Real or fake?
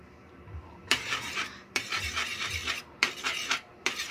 fake